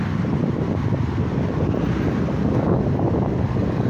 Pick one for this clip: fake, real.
real